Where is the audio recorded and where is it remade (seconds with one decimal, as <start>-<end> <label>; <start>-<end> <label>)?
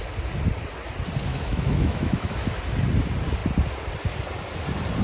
0.0-1.3 recorded; 1.3-2.6 remade; 2.6-5.0 recorded